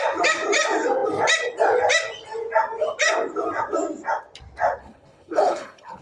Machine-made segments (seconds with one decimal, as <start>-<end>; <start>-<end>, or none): 4.8-6.0